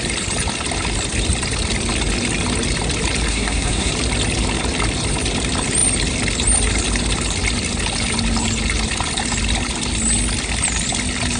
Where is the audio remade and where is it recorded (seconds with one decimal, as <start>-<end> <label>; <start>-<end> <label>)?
0.0-3.3 recorded; 3.3-3.9 remade; 3.9-11.4 recorded